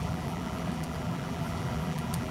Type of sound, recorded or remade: remade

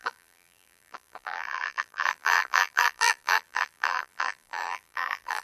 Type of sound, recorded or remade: remade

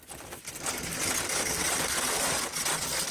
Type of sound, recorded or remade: remade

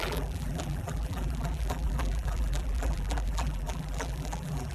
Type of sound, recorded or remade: remade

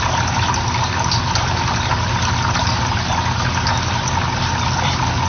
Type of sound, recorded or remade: recorded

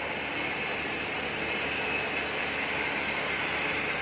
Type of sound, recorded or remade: recorded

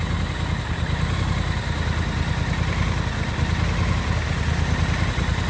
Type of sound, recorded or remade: recorded